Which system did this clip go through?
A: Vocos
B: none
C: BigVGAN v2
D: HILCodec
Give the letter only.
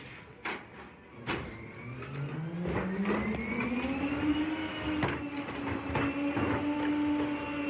B